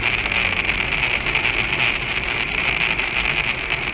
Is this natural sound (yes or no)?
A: yes